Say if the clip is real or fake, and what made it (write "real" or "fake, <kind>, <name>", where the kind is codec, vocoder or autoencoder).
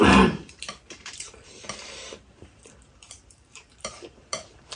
fake, vocoder, BigVGAN v2